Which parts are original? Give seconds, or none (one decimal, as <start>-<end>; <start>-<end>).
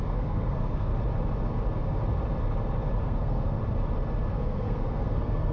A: 0.9-3.0; 3.6-4.3